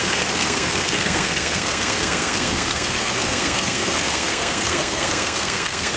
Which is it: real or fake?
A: fake